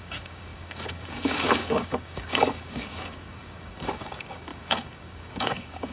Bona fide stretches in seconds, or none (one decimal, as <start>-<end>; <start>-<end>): none